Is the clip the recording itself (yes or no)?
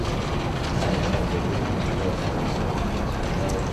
yes